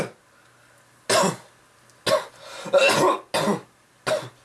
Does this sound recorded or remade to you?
recorded